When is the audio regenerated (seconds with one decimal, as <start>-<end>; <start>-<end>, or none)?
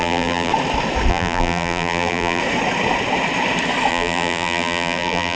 0.0-0.5; 1.1-2.4; 3.9-5.3